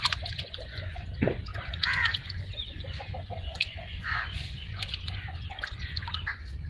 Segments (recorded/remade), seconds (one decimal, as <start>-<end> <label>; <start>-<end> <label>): 0.0-6.7 remade